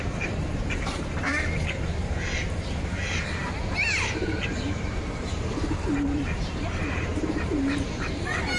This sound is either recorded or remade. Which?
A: remade